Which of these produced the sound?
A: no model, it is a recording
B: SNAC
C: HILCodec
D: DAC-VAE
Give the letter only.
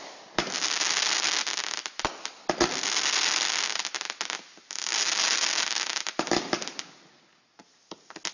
A